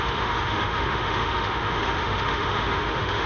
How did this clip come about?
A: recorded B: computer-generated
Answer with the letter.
B